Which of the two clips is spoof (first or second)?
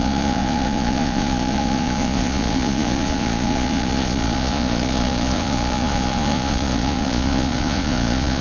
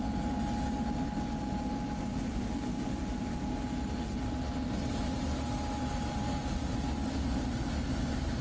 first